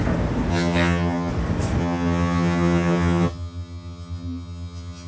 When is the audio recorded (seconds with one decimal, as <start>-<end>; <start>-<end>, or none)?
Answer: 0.0-0.5; 1.3-1.8